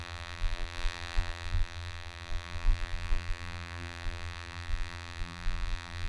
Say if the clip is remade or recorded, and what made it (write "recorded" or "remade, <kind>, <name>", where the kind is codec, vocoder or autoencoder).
remade, vocoder, BigVGAN v2